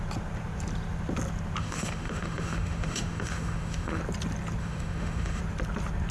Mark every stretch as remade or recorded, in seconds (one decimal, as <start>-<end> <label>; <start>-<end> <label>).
0.0-1.6 recorded; 1.6-4.0 remade; 4.0-4.6 recorded; 4.6-5.4 remade; 5.4-6.1 recorded